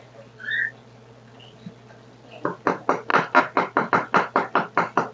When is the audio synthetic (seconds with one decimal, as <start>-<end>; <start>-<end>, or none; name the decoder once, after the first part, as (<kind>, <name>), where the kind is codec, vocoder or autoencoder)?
none